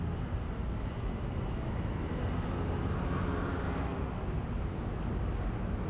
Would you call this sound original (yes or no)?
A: yes